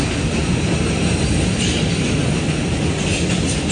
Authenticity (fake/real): real